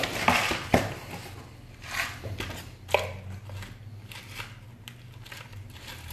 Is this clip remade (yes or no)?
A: no